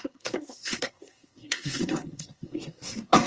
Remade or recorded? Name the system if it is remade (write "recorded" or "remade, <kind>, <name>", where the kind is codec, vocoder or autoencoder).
remade, codec, SNAC